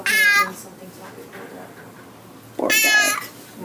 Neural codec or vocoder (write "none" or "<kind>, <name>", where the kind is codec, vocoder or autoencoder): none